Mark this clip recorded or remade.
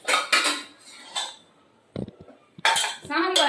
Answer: recorded